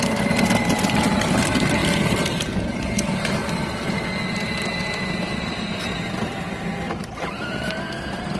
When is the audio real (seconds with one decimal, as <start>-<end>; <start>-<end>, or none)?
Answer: 0.0-1.8; 2.7-3.4; 6.6-8.4